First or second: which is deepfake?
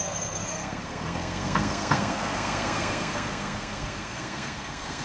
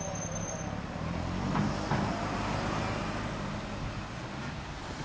first